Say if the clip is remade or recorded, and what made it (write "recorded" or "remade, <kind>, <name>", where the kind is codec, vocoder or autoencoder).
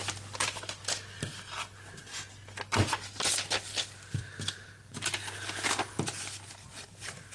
remade, vocoder, BigVGAN v2